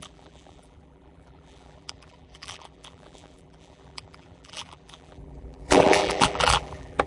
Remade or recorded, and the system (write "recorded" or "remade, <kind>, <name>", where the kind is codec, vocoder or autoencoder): remade, vocoder, BigVGAN v2